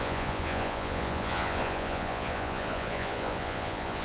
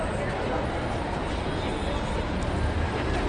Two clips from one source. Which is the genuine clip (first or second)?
second